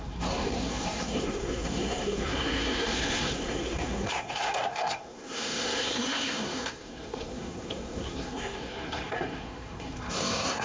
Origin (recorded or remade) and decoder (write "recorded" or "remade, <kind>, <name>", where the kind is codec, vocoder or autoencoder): remade, codec, SNAC